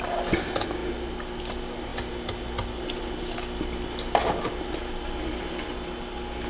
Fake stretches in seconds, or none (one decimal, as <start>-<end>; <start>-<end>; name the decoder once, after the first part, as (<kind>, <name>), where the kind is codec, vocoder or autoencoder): none